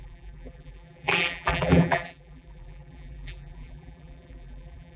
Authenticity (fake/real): fake